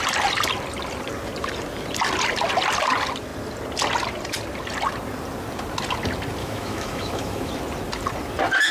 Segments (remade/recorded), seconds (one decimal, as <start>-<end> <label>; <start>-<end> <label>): 0.0-6.4 recorded; 6.4-7.5 remade; 7.5-8.7 recorded